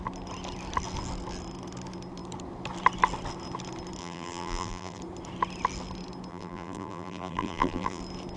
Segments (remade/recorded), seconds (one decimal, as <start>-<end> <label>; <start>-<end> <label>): 0.0-4.0 recorded; 4.0-5.0 remade; 5.0-6.3 recorded; 6.3-8.0 remade; 8.0-8.4 recorded